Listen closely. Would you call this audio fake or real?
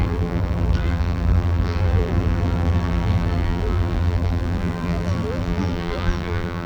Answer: fake